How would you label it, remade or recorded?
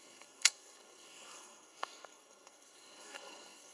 remade